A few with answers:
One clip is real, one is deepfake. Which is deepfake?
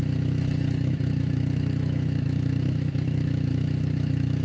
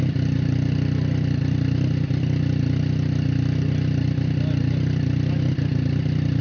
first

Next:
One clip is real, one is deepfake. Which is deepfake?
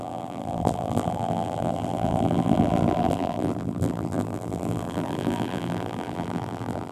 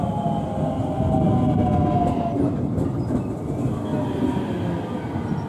first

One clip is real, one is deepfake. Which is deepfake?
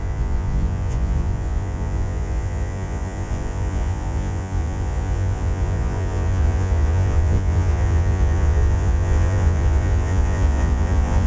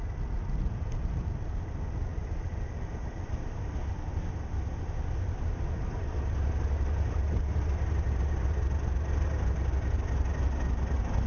first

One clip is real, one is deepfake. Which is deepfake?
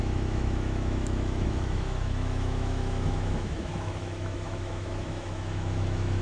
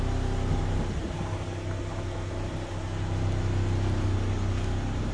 first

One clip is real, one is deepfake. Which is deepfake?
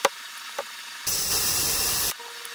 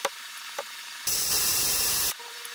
second